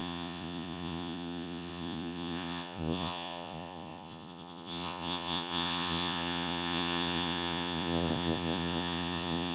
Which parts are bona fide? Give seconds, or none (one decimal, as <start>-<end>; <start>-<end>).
none